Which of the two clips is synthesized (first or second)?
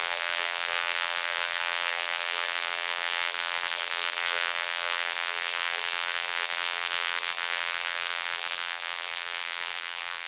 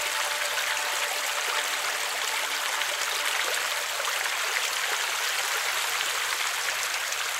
first